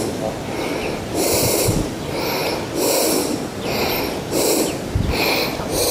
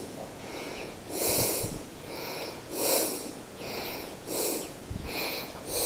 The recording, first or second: first